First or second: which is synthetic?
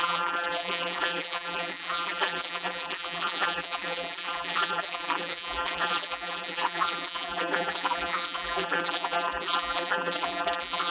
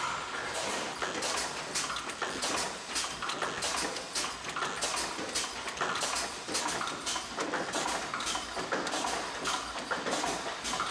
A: first